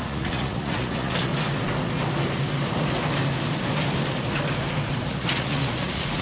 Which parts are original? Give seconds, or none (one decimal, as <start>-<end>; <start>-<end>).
1.3-5.0